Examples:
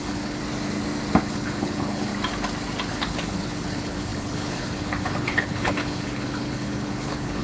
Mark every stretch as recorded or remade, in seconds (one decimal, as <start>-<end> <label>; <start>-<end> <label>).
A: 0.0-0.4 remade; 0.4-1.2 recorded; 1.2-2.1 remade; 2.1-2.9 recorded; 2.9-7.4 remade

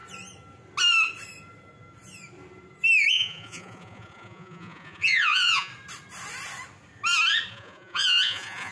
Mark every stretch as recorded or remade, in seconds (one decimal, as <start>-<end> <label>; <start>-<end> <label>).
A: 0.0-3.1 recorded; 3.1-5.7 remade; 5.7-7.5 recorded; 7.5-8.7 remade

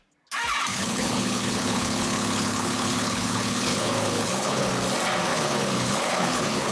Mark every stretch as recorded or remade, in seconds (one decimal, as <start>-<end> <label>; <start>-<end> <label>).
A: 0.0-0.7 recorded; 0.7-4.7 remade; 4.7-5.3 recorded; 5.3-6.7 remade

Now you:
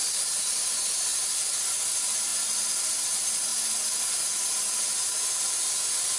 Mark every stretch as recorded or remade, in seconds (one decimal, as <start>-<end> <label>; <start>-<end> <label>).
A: 0.0-2.3 recorded; 2.3-2.9 remade; 2.9-6.2 recorded

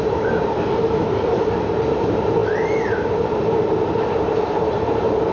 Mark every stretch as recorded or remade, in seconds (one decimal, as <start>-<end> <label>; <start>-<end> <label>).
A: 0.0-5.3 remade

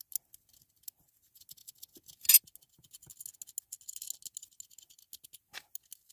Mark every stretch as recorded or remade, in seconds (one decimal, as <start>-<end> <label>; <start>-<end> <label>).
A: 0.0-6.1 recorded